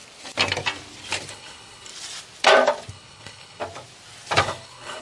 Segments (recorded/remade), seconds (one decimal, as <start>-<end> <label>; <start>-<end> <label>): 0.0-1.3 recorded; 1.3-1.9 remade; 1.9-2.9 recorded; 2.9-3.6 remade; 3.6-4.4 recorded; 4.4-5.0 remade